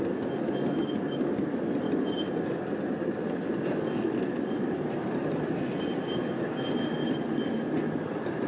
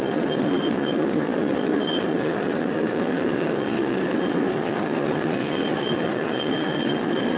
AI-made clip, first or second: second